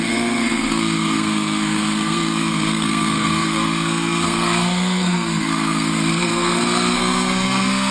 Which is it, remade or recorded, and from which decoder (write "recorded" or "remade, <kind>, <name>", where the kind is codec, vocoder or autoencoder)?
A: remade, codec, SNAC